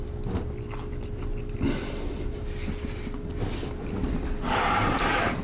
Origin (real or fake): real